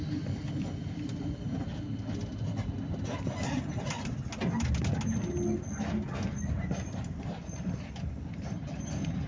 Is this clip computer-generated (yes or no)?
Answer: no